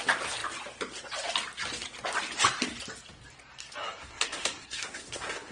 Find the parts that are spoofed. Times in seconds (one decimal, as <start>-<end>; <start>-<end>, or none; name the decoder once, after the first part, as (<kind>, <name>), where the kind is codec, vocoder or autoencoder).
3.8-5.5 (codec, SNAC)